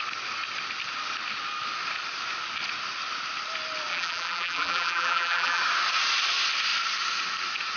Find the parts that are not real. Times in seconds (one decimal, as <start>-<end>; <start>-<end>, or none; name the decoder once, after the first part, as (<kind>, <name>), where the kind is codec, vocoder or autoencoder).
3.9-5.6 (vocoder, BigVGAN v2)